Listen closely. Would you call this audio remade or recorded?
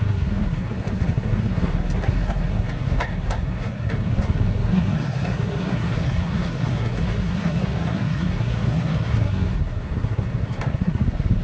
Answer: remade